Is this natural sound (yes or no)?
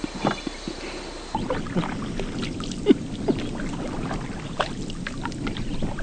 yes